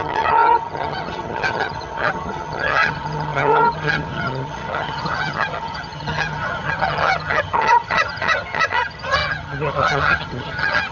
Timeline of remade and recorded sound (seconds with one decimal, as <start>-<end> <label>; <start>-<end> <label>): 0.0-10.9 remade

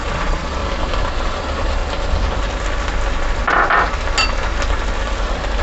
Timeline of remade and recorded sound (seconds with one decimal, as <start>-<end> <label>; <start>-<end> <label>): 0.0-0.6 remade; 0.6-1.4 recorded; 1.4-1.8 remade; 1.8-5.6 recorded

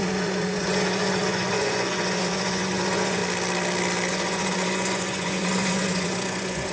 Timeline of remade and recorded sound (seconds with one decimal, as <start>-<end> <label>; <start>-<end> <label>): 0.0-3.2 remade; 3.2-4.1 recorded; 4.1-6.7 remade

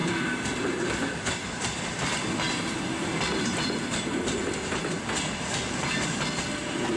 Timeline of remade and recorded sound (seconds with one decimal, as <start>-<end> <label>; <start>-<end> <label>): 0.0-4.2 remade; 4.2-7.0 recorded

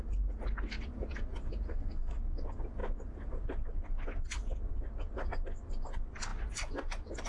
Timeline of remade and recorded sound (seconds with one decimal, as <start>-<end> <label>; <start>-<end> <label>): 0.0-1.7 recorded; 1.7-2.2 remade; 2.2-7.3 recorded